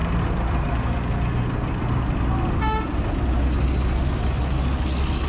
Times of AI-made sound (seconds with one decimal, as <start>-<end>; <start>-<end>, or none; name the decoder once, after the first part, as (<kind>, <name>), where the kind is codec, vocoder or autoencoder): none